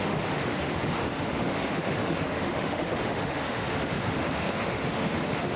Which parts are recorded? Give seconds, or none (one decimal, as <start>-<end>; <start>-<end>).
none